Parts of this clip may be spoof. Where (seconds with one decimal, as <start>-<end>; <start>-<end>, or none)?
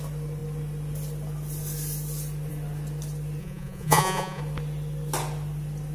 3.4-4.4